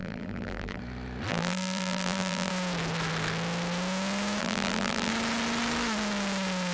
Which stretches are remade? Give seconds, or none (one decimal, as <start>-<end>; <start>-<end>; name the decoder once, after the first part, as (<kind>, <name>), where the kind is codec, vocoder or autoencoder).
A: 0.0-0.8 (vocoder, BigVGAN v2); 1.3-2.5; 4.4-5.1